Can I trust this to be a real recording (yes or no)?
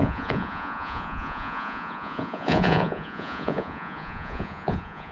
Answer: no